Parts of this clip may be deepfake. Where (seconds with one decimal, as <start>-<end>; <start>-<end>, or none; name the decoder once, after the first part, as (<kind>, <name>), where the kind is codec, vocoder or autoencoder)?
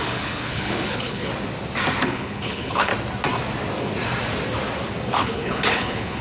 0.0-1.3 (codec, HILCodec); 2.0-2.9; 5.1-6.2